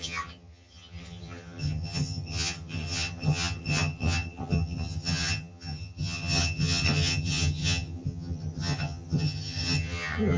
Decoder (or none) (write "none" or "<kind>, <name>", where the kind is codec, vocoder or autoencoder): vocoder, HiFi-GAN